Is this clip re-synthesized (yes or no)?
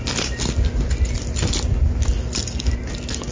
no